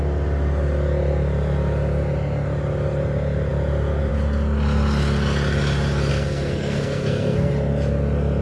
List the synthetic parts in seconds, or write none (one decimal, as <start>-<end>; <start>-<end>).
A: 6.1-7.5